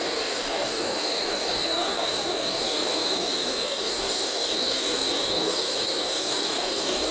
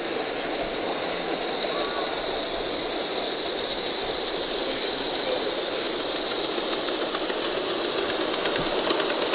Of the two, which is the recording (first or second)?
second